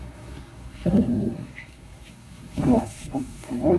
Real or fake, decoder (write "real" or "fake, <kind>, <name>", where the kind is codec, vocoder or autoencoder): fake, codec, SNAC